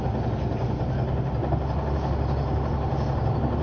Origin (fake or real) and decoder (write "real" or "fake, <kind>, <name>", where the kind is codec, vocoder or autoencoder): real